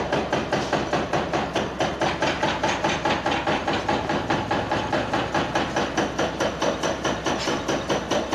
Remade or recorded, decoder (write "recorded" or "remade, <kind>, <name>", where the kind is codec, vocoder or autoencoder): recorded